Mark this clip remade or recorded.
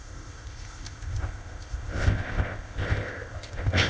remade